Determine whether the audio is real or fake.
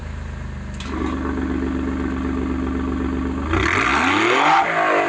real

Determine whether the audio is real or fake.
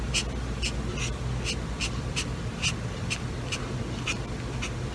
real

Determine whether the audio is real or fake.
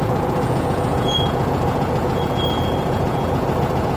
fake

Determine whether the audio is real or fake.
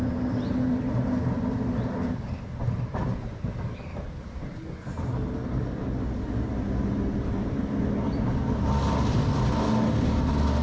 real